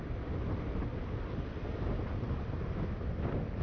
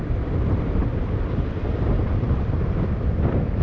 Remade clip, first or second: second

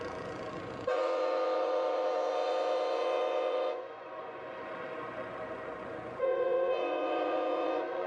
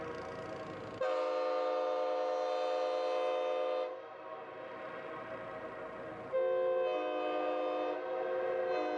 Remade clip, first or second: first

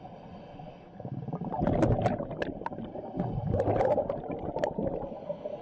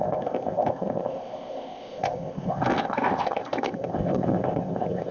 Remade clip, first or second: second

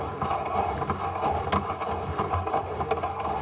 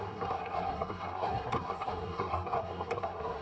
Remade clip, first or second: second